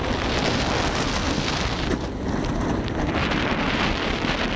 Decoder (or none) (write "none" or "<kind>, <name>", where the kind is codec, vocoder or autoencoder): none